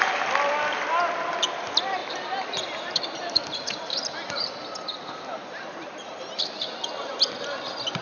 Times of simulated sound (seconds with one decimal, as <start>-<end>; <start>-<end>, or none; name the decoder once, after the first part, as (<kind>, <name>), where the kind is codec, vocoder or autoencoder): 2.0-4.5 (vocoder, BigVGAN v2); 5.4-7.3